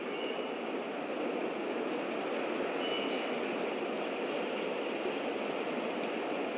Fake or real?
real